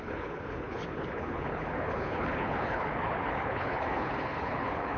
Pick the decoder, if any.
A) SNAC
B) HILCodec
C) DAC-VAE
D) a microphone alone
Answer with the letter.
B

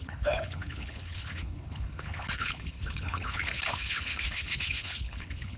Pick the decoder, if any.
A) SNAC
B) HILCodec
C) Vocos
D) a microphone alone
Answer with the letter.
B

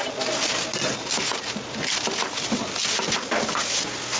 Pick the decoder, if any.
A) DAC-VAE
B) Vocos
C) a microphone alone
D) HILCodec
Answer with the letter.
C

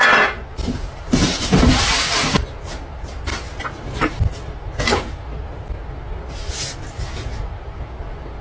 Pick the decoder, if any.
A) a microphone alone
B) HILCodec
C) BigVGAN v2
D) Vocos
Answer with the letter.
A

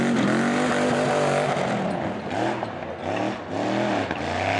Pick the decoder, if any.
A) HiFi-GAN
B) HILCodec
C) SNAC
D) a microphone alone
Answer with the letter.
D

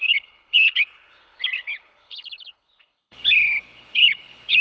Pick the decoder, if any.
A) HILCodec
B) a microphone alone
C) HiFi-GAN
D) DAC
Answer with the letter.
A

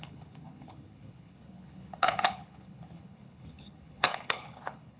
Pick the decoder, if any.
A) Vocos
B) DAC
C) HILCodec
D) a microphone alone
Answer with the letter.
C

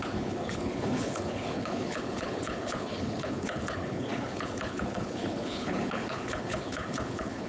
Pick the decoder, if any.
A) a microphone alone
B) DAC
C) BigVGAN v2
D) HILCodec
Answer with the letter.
D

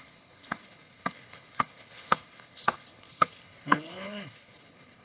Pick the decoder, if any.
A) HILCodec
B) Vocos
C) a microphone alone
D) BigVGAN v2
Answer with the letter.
A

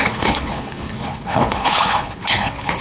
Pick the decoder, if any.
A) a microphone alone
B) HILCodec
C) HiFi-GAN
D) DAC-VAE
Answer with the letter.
B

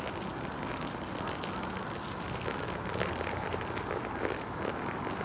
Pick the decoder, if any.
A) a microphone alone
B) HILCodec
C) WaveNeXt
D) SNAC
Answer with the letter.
A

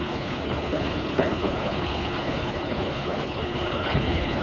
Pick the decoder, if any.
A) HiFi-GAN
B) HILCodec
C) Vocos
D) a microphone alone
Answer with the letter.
B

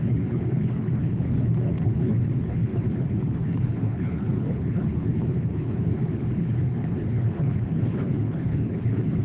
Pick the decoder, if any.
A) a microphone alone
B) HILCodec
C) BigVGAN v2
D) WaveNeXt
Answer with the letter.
B